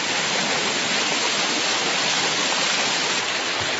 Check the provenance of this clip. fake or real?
real